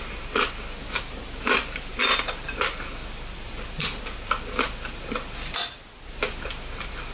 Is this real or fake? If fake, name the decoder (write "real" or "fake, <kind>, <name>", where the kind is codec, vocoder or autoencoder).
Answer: real